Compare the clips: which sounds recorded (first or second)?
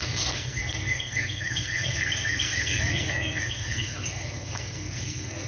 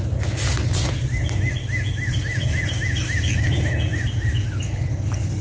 second